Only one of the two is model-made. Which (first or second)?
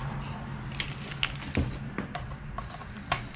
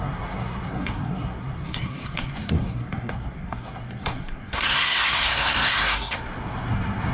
second